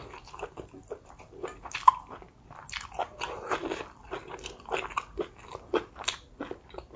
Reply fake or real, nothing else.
real